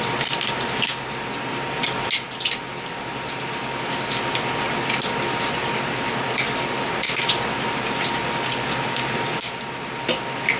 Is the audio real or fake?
real